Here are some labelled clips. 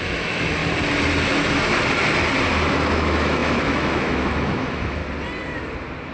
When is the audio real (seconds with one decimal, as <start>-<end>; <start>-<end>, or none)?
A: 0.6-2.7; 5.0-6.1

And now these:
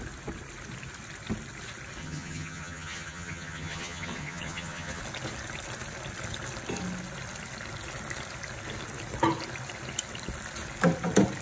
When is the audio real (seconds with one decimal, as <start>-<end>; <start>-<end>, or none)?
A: 0.0-2.0; 5.0-11.4

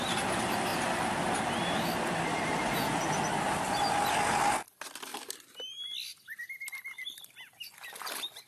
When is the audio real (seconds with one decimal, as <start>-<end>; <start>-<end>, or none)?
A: 0.0-8.5